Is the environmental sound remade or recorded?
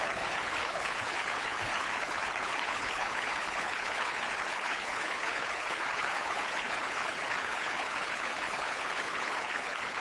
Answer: remade